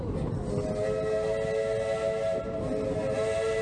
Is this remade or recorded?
recorded